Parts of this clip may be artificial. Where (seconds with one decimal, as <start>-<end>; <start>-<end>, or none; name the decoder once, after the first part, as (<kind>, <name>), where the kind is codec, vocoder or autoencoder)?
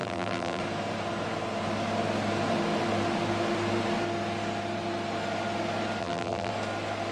0.0-0.6 (vocoder, BigVGAN v2); 6.0-6.5